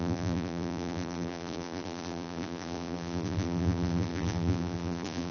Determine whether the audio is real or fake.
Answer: fake